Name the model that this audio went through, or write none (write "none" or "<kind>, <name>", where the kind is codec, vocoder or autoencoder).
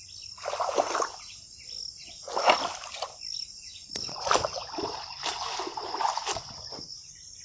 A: none